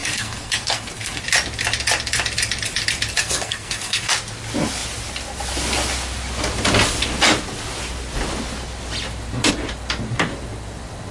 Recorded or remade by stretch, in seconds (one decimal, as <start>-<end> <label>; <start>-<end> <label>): 0.0-1.2 remade; 1.2-3.2 recorded; 3.2-4.1 remade; 4.1-11.1 recorded